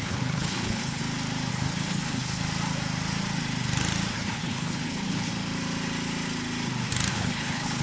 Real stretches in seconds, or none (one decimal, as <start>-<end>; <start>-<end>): 1.0-1.5; 2.4-4.1; 5.3-7.1